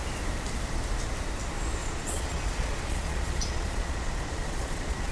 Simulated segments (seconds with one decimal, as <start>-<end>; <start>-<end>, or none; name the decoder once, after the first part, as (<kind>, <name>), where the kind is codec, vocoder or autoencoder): 1.8-5.1 (vocoder, Vocos)

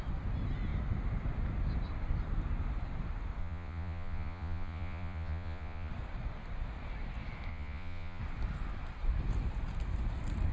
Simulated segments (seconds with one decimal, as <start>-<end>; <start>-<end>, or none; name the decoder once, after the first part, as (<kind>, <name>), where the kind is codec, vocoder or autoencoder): 3.4-5.9 (vocoder, Vocos); 7.5-8.2

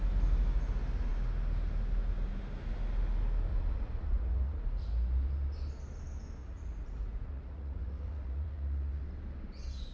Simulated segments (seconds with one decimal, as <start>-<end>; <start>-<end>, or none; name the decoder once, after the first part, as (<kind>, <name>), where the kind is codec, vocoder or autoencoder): 3.5-4.9 (vocoder, Vocos); 6.4-9.0

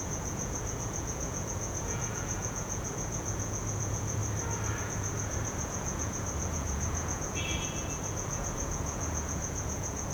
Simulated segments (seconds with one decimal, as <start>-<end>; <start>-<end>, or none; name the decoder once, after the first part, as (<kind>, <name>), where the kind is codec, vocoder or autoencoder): 0.0-4.2 (vocoder, Vocos); 4.8-10.1